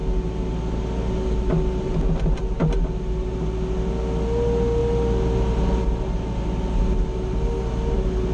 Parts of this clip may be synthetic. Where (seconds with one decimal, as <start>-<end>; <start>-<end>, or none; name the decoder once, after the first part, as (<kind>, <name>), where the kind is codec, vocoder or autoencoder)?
none